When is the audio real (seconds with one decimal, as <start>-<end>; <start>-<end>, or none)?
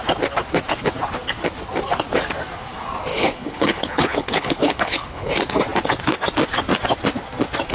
0.0-3.1; 5.3-7.7